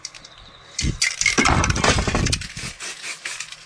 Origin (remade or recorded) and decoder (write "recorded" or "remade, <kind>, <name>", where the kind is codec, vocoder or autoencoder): recorded